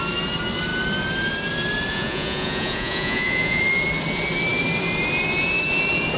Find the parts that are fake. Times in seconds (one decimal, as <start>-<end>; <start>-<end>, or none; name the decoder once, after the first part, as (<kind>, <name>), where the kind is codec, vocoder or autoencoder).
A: 1.9-3.6 (vocoder, Vocos)